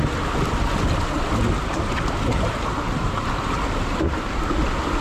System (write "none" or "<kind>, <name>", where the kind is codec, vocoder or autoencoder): none